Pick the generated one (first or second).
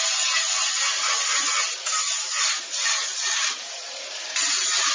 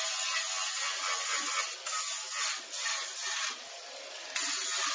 first